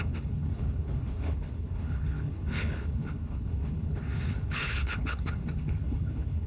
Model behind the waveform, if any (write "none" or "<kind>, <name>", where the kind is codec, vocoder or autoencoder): codec, HILCodec